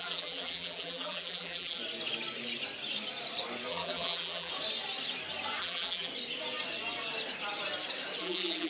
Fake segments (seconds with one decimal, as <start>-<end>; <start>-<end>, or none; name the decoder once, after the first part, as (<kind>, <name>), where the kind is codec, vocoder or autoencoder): 0.0-1.8 (vocoder, BigVGAN v2); 3.7-4.5; 5.6-6.1; 8.2-8.7